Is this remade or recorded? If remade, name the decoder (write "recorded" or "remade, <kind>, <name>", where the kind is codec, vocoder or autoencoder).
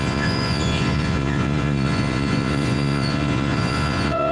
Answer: remade, vocoder, Vocos